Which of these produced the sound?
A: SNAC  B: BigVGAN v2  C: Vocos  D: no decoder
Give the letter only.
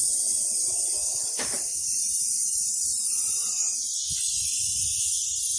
D